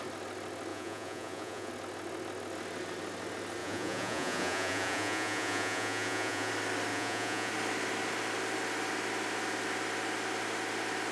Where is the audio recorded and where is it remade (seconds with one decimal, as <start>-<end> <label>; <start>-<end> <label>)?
0.0-0.7 recorded; 0.7-1.7 remade; 1.7-3.6 recorded; 3.6-6.5 remade; 6.5-6.9 recorded; 6.9-7.5 remade; 7.5-11.1 recorded